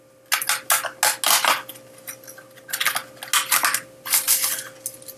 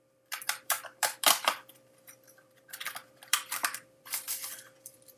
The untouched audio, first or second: first